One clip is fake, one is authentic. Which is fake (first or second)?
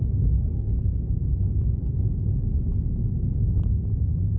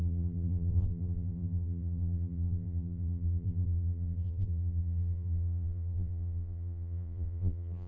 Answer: second